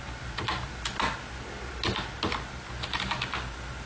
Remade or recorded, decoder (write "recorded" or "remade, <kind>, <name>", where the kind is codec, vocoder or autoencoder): recorded